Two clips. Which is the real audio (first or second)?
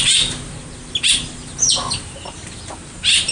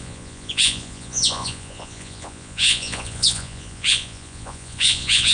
first